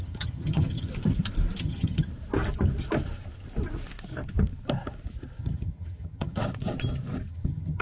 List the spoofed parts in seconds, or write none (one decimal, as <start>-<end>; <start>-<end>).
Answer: 0.0-0.9; 1.6-2.1; 5.4-6.4; 7.3-7.8